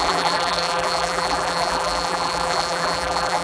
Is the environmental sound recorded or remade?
remade